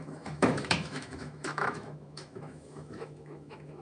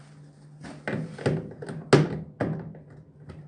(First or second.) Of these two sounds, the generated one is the first